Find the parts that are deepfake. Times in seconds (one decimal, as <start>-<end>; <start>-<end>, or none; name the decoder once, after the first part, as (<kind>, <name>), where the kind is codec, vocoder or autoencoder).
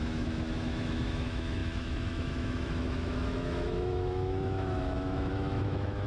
0.0-6.1 (autoencoder, DAC-VAE)